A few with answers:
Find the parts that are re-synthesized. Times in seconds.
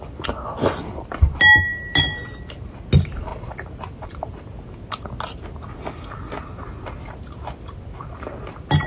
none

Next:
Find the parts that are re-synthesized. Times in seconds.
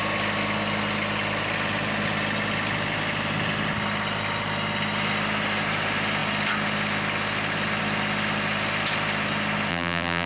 9.7-10.3 (vocoder, BigVGAN v2)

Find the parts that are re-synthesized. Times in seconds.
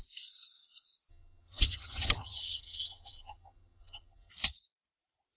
1.1-4.3 (vocoder, HiFi-GAN)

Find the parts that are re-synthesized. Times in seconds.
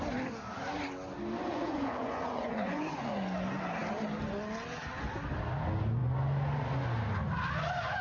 1.4-3.1 (vocoder, Vocos)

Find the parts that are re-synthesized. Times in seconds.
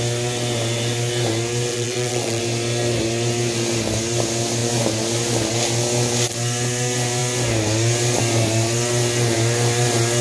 1.7-2.4 (vocoder, WaveNeXt)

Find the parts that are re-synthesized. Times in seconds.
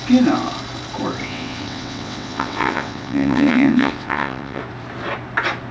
1.2-4.6 (vocoder, WaveNeXt)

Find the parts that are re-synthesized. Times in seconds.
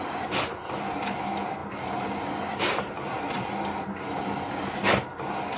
none